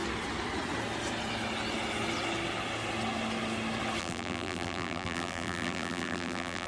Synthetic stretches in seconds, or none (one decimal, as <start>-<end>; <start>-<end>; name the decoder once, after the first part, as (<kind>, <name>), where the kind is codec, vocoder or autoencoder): 4.0-6.7 (vocoder, BigVGAN v2)